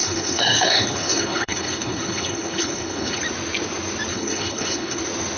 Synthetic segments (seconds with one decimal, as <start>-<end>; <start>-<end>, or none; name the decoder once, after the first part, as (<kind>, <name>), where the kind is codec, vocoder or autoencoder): 0.0-3.2 (codec, HILCodec); 4.1-5.0